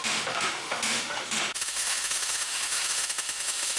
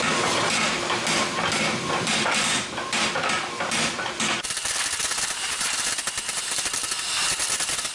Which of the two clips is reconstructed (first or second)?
first